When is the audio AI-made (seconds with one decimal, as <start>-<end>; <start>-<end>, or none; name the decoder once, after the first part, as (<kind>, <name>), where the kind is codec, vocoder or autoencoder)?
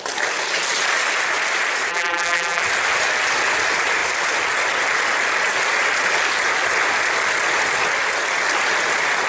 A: 1.9-2.6 (vocoder, BigVGAN v2)